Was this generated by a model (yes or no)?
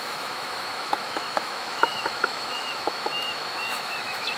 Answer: yes